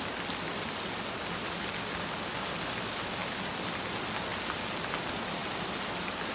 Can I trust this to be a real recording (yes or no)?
yes